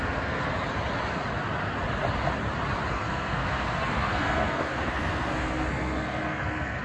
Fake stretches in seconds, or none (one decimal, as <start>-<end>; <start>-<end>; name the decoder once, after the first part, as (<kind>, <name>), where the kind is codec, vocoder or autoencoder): 0.0-0.5 (codec, SNAC); 2.9-6.8